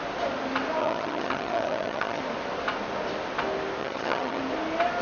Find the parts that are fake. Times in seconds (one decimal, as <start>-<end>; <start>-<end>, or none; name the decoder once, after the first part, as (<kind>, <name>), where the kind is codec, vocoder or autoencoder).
0.8-2.2 (vocoder, HiFi-GAN); 3.8-4.4